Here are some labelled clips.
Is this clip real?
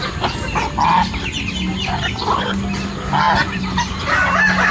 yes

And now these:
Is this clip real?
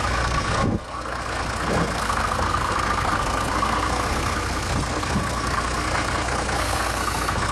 no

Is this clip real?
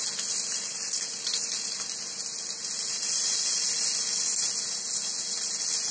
yes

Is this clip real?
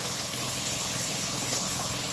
no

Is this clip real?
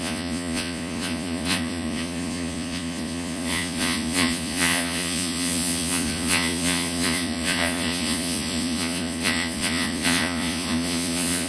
no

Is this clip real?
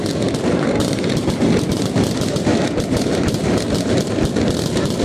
no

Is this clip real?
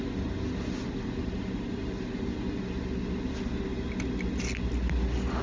yes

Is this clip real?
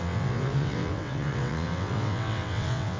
no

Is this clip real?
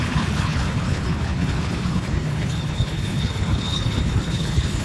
no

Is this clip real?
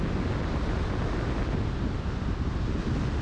yes